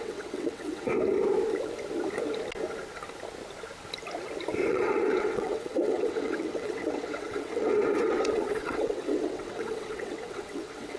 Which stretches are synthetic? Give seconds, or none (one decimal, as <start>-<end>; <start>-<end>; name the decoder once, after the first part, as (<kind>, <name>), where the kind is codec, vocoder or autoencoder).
0.0-0.9 (vocoder, WaveNeXt); 4.7-11.0